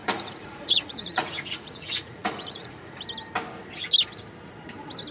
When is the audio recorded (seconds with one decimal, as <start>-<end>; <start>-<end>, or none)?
3.0-5.1